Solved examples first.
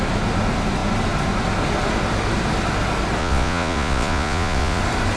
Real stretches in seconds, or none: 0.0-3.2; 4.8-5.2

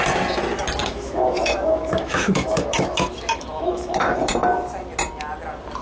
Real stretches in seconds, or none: 0.0-0.8; 4.2-5.8

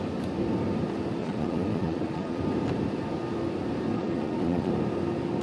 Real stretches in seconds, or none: 0.0-1.2; 2.4-3.9; 4.7-5.4

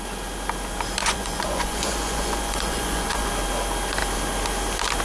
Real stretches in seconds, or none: 0.0-1.0; 3.3-5.0

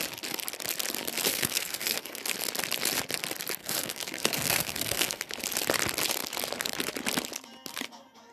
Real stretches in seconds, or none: 0.0-1.3; 2.2-3.6; 5.3-8.3

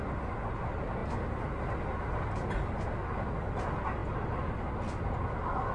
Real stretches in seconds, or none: 0.0-5.7

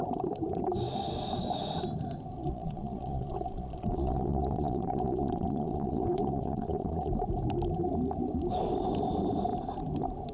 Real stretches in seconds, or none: 0.0-2.4; 7.1-10.3